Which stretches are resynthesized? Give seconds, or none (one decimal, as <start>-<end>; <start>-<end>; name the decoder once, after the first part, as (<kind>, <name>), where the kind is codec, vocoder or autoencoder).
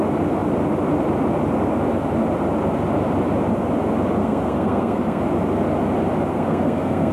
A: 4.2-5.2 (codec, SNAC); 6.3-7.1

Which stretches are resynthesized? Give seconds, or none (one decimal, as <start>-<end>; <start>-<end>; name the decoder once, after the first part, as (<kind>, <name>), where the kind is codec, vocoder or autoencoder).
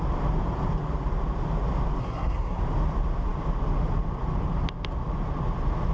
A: 2.0-2.6 (codec, SNAC)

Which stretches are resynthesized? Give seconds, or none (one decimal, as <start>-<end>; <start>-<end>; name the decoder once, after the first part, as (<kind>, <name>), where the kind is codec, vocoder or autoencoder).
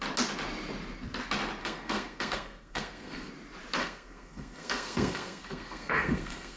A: 1.6-3.3 (codec, SNAC); 3.8-6.6